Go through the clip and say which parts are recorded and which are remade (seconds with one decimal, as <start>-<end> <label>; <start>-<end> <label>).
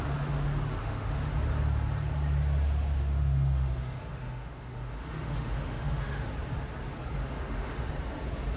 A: 0.0-0.8 recorded; 0.8-1.3 remade; 1.3-3.0 recorded; 3.0-6.3 remade; 6.3-7.2 recorded; 7.2-7.9 remade; 7.9-8.6 recorded